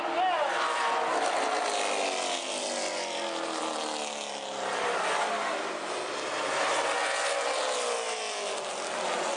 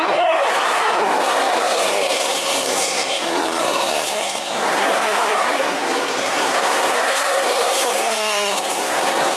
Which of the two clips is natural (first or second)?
first